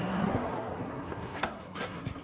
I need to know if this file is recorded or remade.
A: remade